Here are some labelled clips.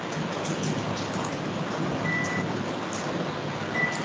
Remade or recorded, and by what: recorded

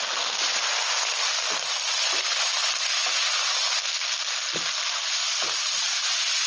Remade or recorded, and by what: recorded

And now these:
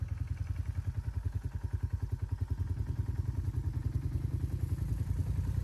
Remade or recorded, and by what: recorded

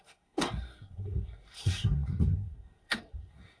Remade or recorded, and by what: remade, codec, SNAC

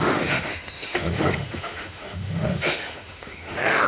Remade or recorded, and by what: remade, autoencoder, DAC-VAE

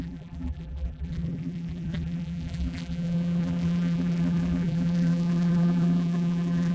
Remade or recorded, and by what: remade, vocoder, BigVGAN v2